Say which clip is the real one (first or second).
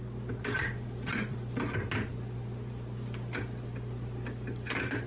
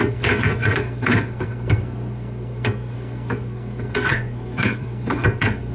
first